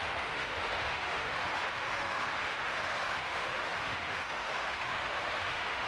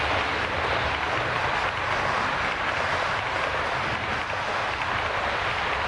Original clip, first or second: second